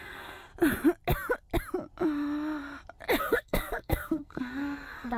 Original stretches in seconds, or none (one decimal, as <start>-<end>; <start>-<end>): 0.5-3.2